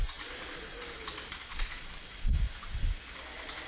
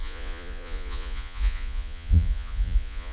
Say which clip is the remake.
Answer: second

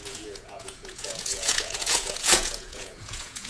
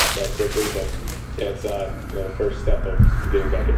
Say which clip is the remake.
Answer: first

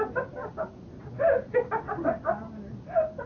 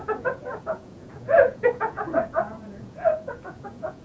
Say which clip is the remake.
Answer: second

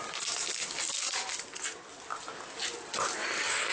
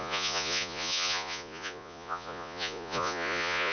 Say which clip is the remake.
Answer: second